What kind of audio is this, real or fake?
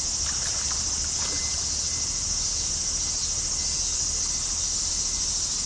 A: real